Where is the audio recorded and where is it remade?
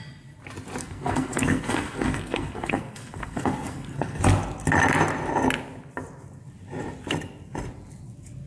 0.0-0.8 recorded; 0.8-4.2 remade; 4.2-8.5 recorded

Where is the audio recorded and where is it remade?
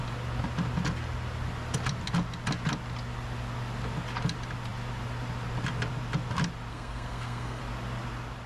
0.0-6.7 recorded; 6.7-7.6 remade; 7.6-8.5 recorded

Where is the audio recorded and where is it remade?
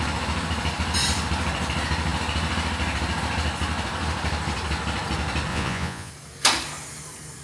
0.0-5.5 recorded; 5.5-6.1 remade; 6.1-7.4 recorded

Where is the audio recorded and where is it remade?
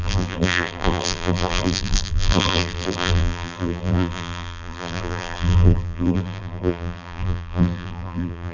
0.0-8.5 remade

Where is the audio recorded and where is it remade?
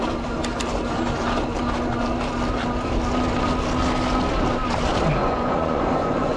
0.0-5.2 recorded; 5.2-6.4 remade